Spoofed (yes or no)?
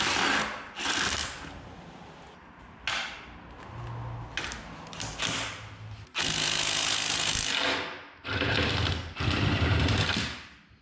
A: no